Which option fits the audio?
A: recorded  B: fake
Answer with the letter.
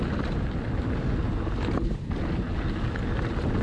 A